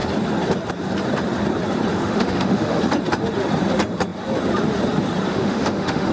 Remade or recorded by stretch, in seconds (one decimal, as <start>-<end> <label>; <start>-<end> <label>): 0.0-1.9 recorded; 1.9-2.8 remade; 2.8-5.3 recorded; 5.3-6.1 remade